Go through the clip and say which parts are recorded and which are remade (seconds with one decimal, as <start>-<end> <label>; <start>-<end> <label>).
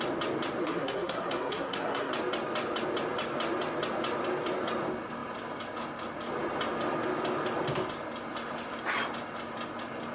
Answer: 0.0-0.6 recorded; 0.6-2.1 remade; 2.1-10.1 recorded